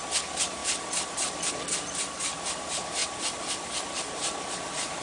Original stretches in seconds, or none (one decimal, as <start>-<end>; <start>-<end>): 0.0-5.0